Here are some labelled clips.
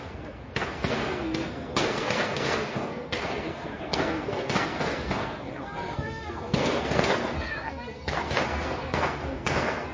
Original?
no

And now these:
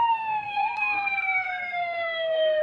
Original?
no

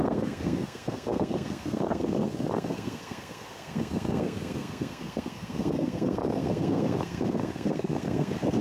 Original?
no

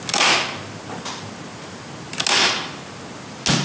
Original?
yes